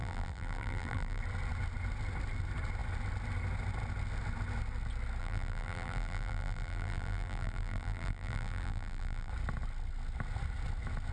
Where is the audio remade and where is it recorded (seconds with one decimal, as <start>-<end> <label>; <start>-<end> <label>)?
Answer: 0.0-1.2 remade; 1.2-5.2 recorded; 5.2-9.3 remade; 9.3-11.1 recorded